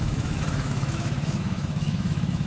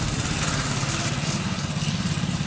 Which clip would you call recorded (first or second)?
second